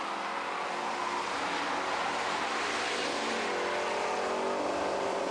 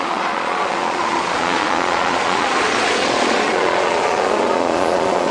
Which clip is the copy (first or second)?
second